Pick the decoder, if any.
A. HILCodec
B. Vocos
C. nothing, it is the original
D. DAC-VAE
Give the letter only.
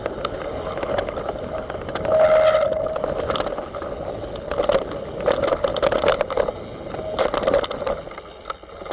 C